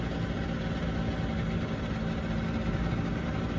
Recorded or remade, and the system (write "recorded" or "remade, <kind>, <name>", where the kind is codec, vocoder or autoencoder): recorded